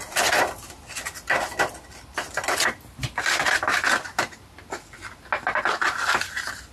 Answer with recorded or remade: recorded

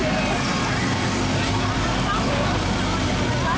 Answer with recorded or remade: remade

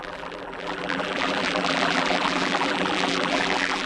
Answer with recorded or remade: remade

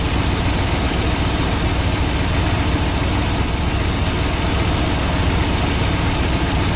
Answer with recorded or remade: recorded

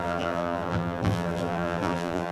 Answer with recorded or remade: remade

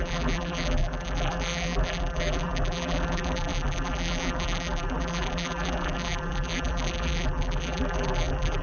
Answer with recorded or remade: remade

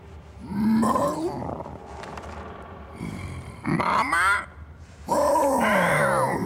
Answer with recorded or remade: remade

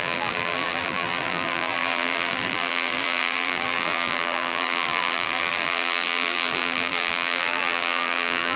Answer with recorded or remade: remade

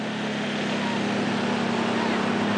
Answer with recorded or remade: recorded